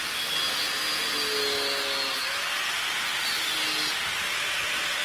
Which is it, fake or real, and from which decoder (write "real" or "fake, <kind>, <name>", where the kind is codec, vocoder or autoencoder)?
real